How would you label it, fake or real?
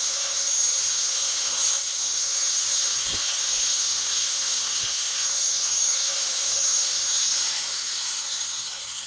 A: fake